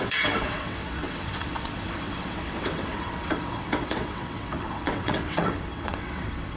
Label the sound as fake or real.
fake